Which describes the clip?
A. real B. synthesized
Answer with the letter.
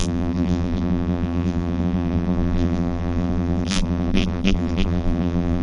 B